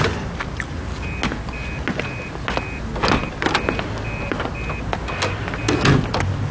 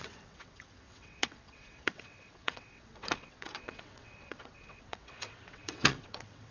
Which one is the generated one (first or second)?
second